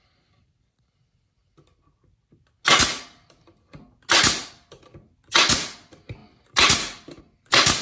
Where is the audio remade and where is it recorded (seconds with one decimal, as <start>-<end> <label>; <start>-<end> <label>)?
0.0-7.8 recorded

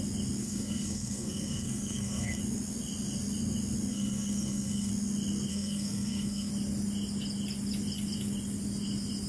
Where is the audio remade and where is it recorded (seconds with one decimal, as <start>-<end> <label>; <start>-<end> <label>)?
0.0-0.4 recorded; 0.4-2.4 remade; 2.4-3.9 recorded; 3.9-4.9 remade; 4.9-5.5 recorded; 5.5-6.5 remade; 6.5-9.3 recorded

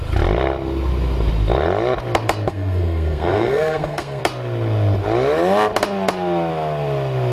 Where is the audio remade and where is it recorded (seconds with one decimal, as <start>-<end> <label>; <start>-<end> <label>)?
0.0-2.5 recorded; 2.5-4.2 remade; 4.2-7.3 recorded